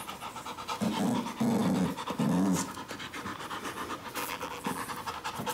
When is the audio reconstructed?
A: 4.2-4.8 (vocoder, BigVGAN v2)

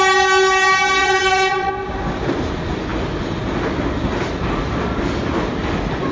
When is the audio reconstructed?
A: 1.0-1.7 (vocoder, Vocos)

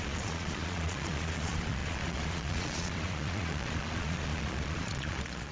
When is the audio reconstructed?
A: 0.0-5.5 (vocoder, Vocos)

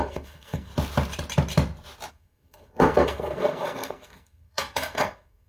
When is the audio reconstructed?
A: 0.0-0.7 (codec, SNAC); 2.1-5.5

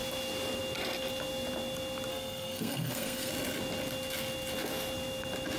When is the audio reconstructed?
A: 2.1-3.3 (codec, SNAC)

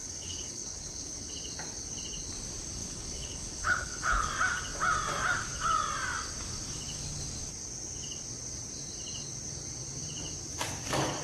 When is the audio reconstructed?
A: 0.0-1.3 (codec, HILCodec); 2.8-4.3